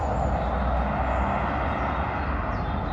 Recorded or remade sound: recorded